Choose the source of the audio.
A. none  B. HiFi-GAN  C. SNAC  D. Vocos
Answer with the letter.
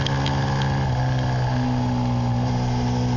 A